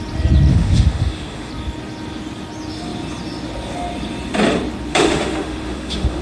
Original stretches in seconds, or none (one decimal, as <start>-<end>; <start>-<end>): 0.0-0.5; 1.5-4.9